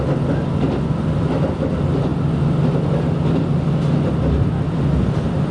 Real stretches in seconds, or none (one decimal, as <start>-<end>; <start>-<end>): 0.0-5.5